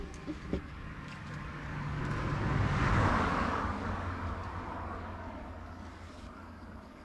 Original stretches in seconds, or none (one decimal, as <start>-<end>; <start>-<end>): 2.0-2.7